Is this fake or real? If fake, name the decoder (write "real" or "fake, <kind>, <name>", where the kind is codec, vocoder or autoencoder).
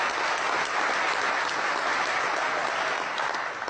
real